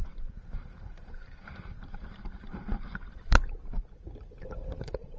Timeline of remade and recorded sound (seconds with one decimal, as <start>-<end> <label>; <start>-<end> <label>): 0.0-3.8 remade; 3.8-4.4 recorded; 4.4-5.2 remade